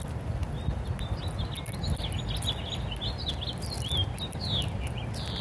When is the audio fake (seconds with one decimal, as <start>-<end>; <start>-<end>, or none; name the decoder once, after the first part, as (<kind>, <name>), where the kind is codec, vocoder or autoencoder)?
none